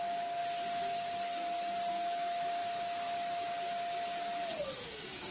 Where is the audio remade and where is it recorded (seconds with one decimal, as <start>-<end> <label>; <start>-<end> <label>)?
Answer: 0.0-0.4 remade; 0.4-1.9 recorded; 1.9-2.6 remade; 2.6-4.6 recorded; 4.6-5.3 remade